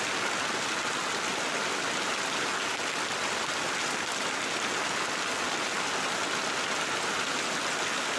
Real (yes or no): yes